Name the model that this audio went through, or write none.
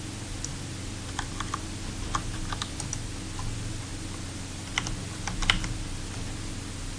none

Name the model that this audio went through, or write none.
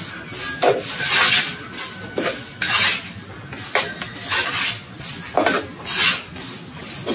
none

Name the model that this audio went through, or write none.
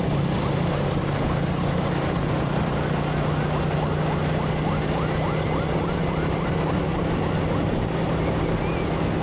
none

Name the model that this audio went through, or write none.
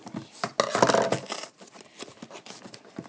none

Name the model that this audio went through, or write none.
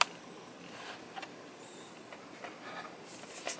none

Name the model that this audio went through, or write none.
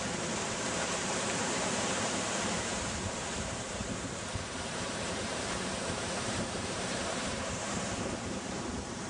vocoder, BigVGAN v2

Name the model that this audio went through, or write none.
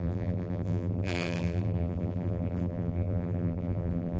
vocoder, BigVGAN v2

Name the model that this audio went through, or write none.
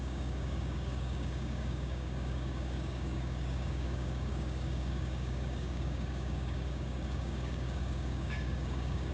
codec, DAC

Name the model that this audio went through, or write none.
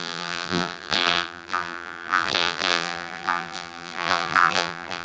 vocoder, BigVGAN v2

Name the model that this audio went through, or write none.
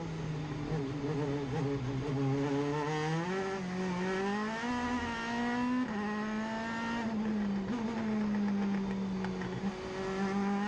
none